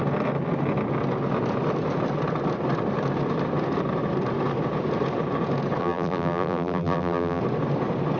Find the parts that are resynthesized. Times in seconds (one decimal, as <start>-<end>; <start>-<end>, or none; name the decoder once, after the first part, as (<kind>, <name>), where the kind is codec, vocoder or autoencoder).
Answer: 5.8-7.4 (vocoder, BigVGAN v2)